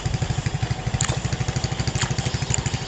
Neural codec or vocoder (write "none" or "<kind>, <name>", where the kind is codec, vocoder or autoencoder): none